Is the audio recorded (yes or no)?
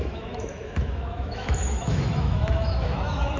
no